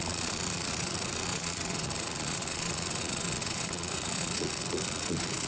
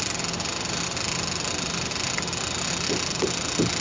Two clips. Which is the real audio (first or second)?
second